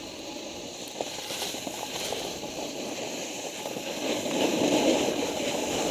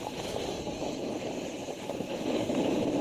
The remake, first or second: second